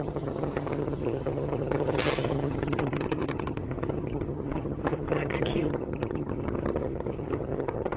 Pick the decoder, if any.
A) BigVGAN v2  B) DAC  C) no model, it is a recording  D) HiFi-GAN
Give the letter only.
D